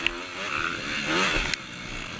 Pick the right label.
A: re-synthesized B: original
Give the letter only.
B